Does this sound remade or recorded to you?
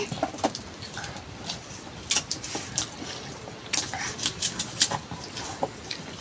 remade